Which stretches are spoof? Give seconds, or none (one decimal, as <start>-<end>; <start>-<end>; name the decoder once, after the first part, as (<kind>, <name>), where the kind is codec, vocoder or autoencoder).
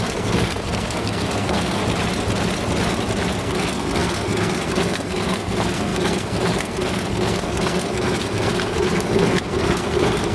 0.0-1.8 (codec, SNAC); 3.3-10.3